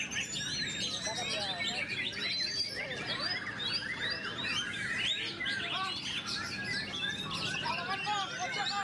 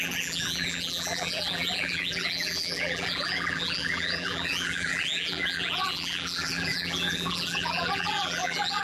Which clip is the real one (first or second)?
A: first